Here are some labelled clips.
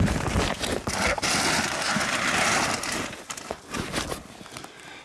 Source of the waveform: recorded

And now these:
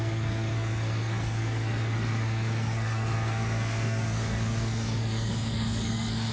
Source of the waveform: remade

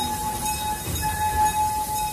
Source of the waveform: recorded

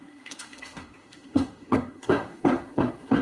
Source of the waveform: remade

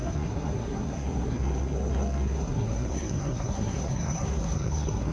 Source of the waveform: remade